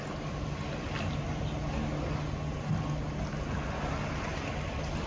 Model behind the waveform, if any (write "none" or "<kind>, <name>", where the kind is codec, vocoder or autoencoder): none